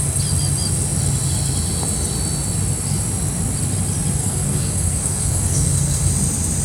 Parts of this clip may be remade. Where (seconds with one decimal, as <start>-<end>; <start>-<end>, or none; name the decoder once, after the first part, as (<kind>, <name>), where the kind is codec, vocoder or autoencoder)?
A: 4.2-6.1 (codec, SNAC)